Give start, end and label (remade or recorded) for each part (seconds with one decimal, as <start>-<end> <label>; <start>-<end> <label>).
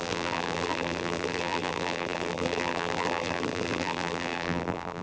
0.0-5.0 remade